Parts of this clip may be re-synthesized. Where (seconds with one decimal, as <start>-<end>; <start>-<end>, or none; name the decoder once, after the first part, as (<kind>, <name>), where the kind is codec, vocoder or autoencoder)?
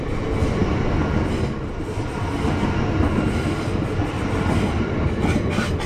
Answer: none